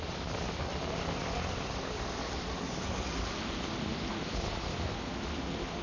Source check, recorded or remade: recorded